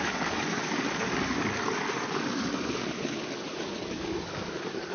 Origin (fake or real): fake